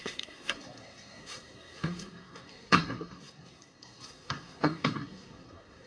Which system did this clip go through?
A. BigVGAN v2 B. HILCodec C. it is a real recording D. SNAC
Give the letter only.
D